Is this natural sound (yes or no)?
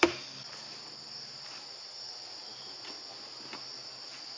yes